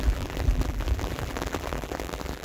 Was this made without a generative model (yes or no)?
no